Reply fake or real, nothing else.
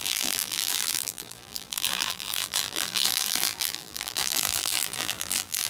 fake